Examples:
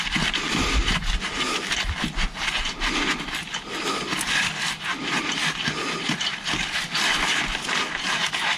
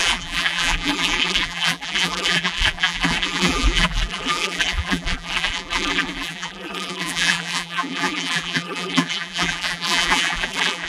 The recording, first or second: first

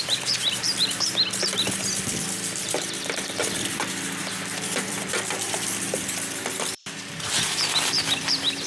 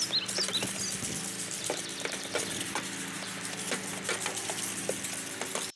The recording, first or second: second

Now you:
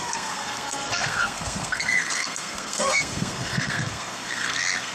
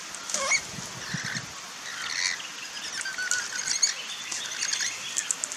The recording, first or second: second